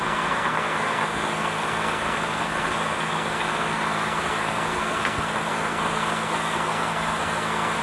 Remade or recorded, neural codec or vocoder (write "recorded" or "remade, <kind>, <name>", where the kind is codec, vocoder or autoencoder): remade, codec, SNAC